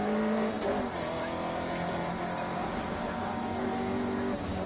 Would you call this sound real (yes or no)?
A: yes